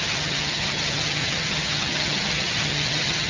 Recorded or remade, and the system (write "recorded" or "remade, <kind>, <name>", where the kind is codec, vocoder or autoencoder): remade, vocoder, HiFi-GAN